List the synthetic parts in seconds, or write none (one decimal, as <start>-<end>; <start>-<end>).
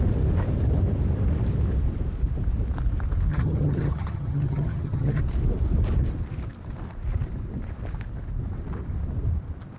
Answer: 3.3-5.2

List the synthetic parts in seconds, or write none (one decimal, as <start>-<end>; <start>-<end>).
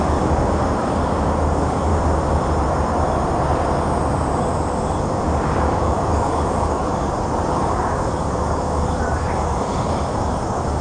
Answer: 0.0-1.9; 5.0-6.9; 7.5-10.8